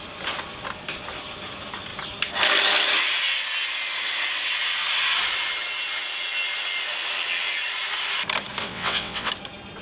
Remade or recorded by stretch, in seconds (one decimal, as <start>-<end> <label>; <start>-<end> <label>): 0.0-8.6 recorded; 8.6-9.3 remade; 9.3-9.8 recorded